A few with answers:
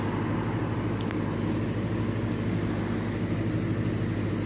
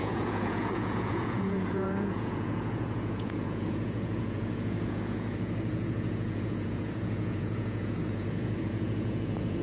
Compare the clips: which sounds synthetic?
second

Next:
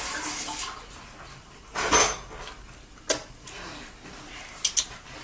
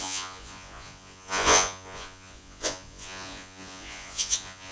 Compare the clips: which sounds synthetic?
second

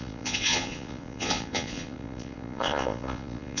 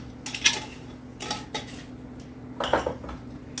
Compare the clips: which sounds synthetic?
first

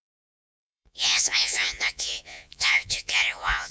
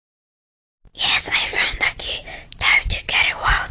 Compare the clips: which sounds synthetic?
first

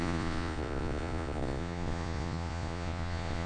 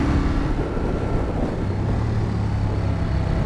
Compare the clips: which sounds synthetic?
first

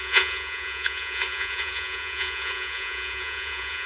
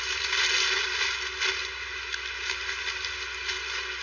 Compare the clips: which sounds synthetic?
first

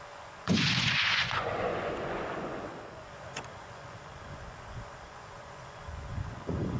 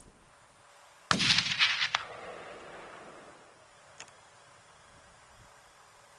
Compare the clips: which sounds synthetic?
first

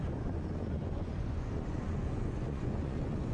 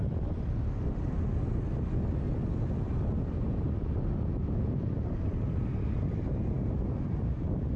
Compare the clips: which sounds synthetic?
first